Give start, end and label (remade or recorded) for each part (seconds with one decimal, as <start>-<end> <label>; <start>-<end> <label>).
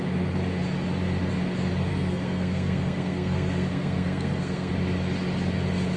0.0-1.9 recorded; 1.9-4.7 remade; 4.7-6.0 recorded